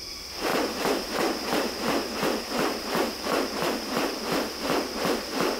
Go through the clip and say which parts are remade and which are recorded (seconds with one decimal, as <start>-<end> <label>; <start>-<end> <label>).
0.0-5.6 recorded

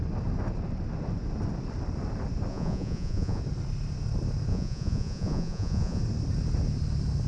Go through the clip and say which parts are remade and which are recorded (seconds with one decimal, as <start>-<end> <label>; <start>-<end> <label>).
0.0-2.5 recorded; 2.5-3.4 remade; 3.4-4.5 recorded; 4.5-6.0 remade; 6.0-7.3 recorded

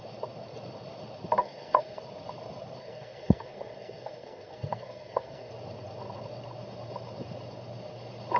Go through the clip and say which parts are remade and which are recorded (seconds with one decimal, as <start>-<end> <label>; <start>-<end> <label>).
0.0-1.4 recorded; 1.4-2.0 remade; 2.0-2.8 recorded; 2.8-5.5 remade; 5.5-8.4 recorded

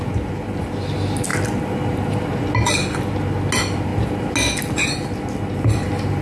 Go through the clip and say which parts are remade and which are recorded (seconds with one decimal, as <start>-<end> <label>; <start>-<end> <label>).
0.0-6.2 recorded

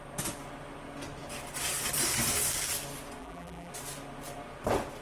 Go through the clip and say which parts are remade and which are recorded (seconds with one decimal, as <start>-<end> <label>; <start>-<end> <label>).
0.0-3.2 recorded; 3.2-3.7 remade; 3.7-5.0 recorded

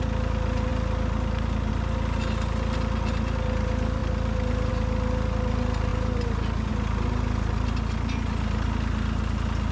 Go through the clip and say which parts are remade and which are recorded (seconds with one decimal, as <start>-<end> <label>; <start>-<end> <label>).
0.0-9.7 recorded

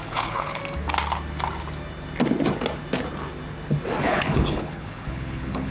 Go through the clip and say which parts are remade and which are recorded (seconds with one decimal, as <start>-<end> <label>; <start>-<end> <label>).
0.0-0.6 remade; 0.6-4.0 recorded; 4.0-5.7 remade